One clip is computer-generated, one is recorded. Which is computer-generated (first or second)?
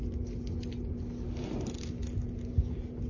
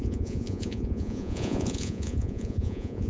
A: second